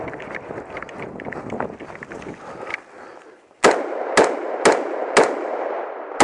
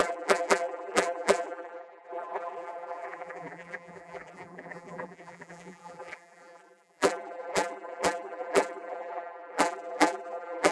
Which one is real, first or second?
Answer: first